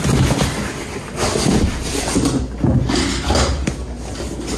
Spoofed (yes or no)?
no